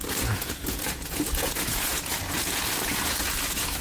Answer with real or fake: fake